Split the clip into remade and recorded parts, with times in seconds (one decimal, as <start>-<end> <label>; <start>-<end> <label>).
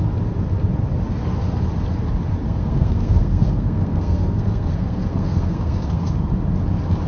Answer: 0.0-2.4 recorded; 2.4-6.3 remade; 6.3-7.1 recorded